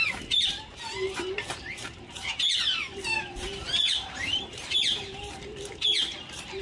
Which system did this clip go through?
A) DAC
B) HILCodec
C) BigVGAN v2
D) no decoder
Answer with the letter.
C